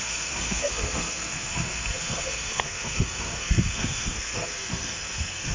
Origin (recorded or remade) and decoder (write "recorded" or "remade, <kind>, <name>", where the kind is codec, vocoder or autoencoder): remade, codec, SNAC